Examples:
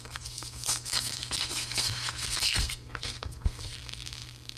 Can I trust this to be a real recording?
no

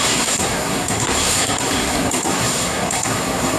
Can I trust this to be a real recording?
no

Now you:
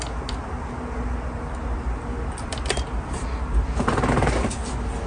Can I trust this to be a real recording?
yes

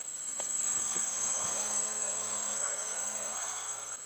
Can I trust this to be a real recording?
no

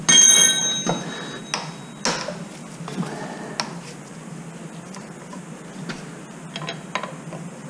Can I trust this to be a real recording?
yes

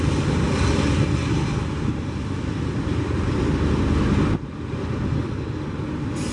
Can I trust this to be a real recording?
yes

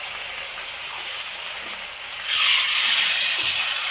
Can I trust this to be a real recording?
yes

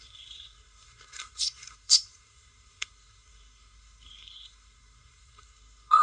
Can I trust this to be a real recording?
no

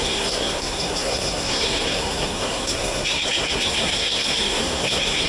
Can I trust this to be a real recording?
no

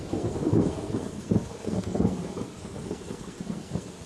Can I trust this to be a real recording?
no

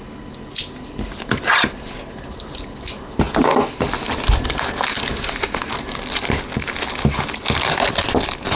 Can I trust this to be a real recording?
yes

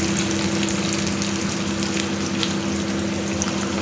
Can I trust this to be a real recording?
yes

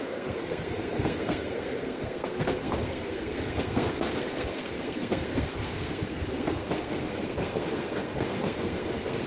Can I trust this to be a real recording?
no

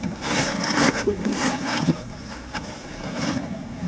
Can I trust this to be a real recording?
no